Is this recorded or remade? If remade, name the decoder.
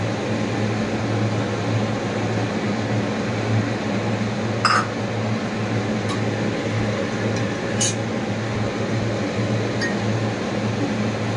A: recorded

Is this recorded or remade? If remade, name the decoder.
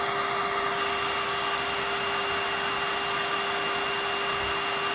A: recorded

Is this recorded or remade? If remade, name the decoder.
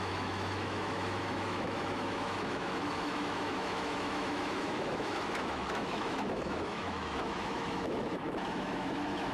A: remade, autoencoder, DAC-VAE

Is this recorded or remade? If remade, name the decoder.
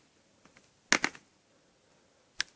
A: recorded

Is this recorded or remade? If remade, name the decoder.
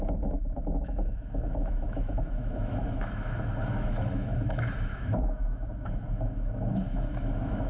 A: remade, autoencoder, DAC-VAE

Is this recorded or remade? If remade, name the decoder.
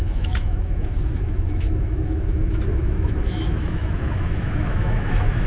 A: remade, autoencoder, DAC-VAE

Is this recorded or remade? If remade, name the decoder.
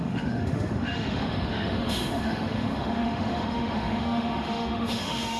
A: remade, autoencoder, DAC-VAE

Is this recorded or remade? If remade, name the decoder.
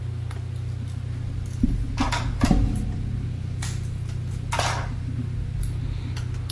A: recorded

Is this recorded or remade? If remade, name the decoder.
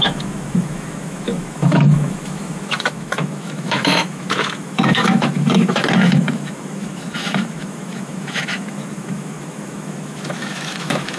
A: remade, autoencoder, DAC-VAE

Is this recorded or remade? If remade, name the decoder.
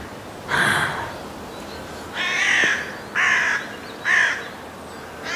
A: recorded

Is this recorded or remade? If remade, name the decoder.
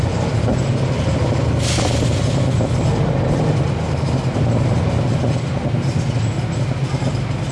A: recorded